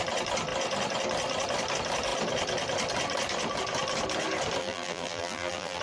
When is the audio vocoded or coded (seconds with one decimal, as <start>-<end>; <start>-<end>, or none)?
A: 4.6-5.8